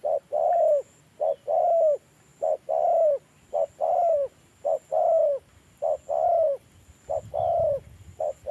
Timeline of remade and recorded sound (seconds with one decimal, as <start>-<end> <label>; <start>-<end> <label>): 0.0-8.5 recorded